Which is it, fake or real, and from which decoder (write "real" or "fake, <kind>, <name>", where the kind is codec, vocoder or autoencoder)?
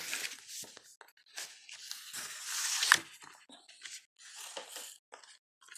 real